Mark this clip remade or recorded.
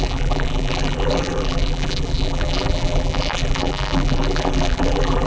remade